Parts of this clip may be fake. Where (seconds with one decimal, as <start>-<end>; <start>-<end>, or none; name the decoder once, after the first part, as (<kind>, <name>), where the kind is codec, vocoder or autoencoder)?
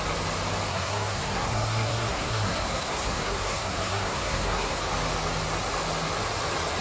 0.7-4.8 (codec, SNAC)